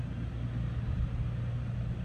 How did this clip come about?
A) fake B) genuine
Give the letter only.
B